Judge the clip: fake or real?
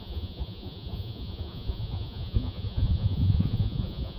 fake